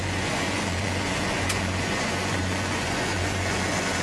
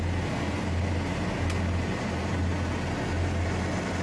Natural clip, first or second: second